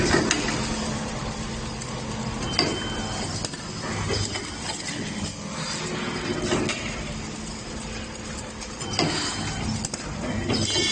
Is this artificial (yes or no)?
no